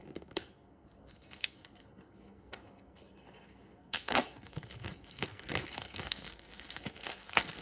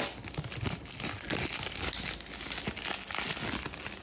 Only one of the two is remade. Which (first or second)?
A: first